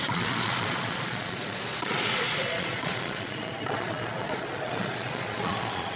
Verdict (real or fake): fake